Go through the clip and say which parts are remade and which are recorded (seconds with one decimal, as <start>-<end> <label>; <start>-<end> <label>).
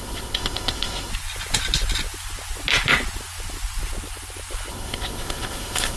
0.0-1.1 remade; 1.1-4.7 recorded; 4.7-6.0 remade